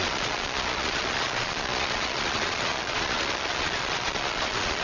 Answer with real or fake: fake